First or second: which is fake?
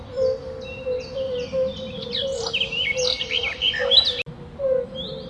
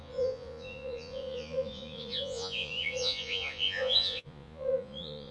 second